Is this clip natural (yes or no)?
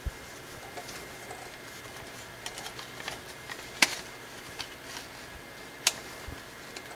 yes